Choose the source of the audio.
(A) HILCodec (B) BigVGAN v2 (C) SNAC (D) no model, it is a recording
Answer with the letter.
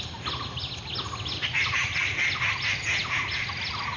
D